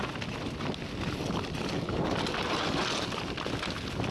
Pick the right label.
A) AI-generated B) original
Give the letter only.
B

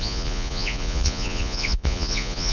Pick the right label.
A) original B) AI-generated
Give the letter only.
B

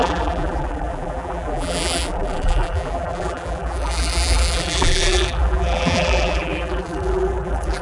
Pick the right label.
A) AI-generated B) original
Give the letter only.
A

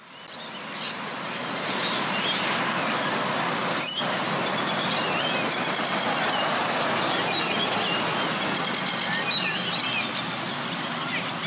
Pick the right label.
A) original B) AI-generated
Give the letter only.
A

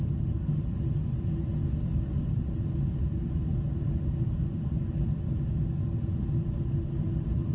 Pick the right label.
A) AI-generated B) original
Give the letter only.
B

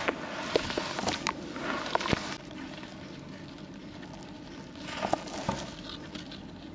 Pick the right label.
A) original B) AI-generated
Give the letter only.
A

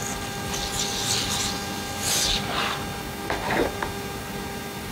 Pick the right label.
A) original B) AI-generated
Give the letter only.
A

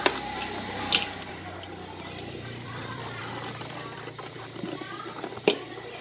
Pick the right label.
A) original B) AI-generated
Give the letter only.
B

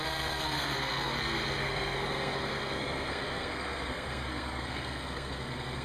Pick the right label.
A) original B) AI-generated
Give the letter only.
B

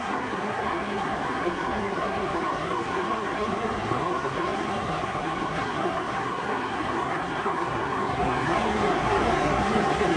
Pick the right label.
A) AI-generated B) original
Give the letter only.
A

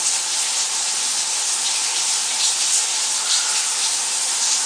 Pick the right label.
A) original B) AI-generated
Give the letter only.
A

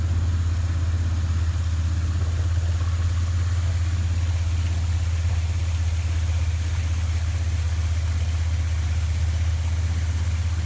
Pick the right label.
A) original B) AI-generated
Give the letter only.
A